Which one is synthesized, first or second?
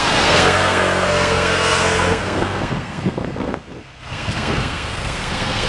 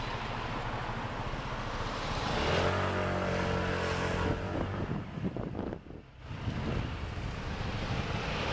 first